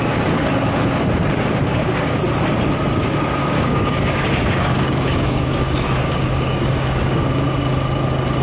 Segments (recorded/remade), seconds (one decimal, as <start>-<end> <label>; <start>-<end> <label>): 0.0-1.7 recorded; 1.7-2.2 remade; 2.2-3.4 recorded; 3.4-7.3 remade; 7.3-8.4 recorded